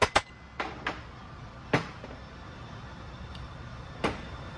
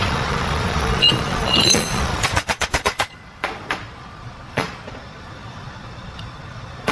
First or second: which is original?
first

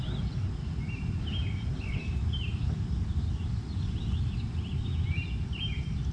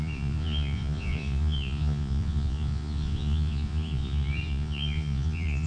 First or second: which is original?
first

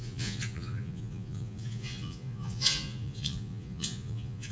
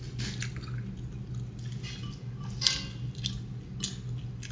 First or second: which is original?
second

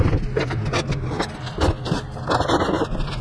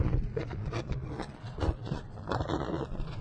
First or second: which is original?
first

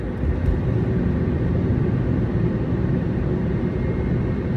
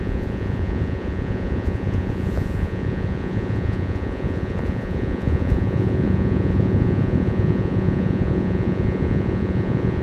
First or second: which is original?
first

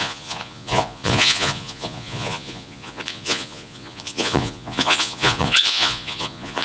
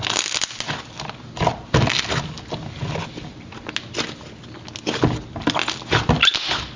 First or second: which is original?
second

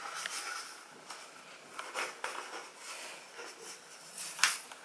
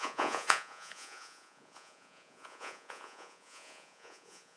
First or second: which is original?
first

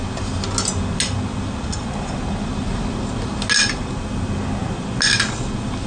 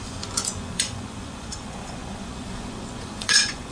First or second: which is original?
first